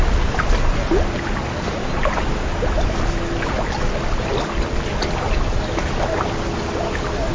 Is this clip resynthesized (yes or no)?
no